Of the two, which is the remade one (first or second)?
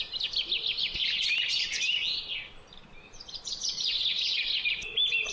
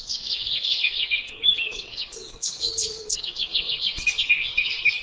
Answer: second